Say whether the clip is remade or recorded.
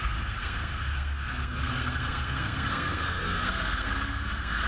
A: remade